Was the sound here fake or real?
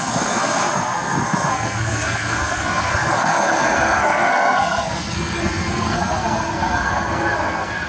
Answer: fake